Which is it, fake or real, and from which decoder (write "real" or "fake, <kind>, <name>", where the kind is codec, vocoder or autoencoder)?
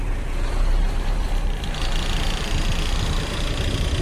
fake, vocoder, BigVGAN v2